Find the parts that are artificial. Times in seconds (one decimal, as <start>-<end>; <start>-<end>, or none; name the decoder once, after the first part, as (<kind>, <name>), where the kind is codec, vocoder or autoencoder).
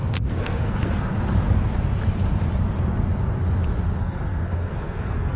0.0-1.1 (codec, SNAC); 4.0-5.4